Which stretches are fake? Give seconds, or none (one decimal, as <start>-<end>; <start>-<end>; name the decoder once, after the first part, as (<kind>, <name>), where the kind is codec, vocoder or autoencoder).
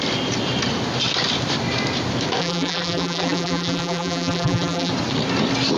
2.4-4.9 (vocoder, BigVGAN v2)